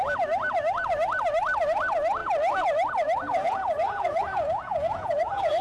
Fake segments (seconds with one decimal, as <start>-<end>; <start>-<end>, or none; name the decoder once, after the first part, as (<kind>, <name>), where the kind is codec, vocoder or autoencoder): 3.3-5.6 (vocoder, Vocos)